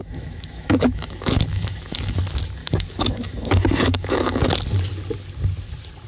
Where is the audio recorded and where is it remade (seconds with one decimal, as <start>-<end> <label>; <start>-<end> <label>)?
0.0-2.2 remade; 2.2-2.6 recorded; 2.6-4.5 remade; 4.5-6.1 recorded